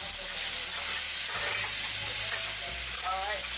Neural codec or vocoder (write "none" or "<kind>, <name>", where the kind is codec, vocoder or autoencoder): none